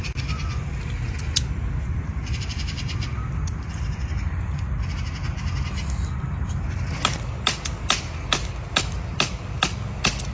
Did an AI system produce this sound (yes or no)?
no